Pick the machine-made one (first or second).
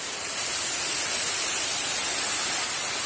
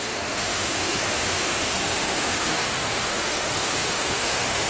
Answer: second